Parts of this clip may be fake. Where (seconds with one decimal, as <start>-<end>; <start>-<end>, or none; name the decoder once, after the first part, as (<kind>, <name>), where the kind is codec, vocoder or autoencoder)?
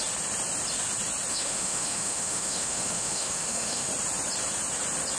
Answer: 1.3-3.9 (autoencoder, DAC-VAE)